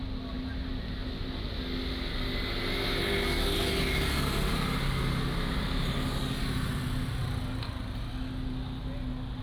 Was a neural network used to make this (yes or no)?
no